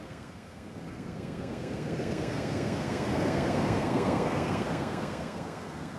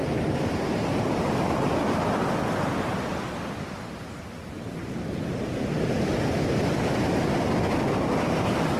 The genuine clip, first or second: second